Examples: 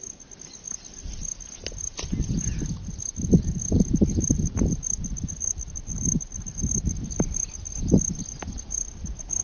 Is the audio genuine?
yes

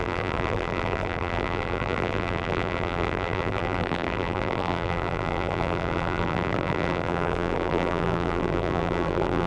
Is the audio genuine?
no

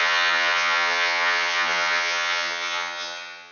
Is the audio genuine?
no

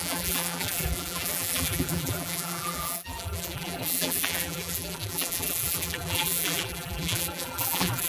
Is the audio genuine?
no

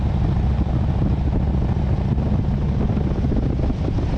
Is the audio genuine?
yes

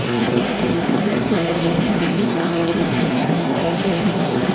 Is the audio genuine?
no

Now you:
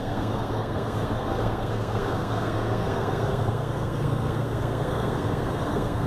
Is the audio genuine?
no